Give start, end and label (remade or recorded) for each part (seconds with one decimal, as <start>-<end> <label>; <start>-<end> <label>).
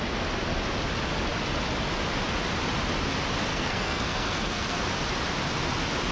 0.0-3.5 recorded; 3.5-4.8 remade; 4.8-6.1 recorded